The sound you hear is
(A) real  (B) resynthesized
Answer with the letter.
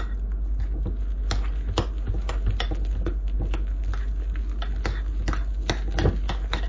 A